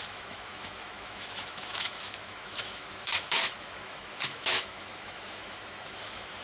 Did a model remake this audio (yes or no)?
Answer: yes